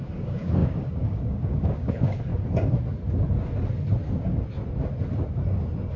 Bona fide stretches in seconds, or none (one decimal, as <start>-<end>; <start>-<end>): 2.3-6.0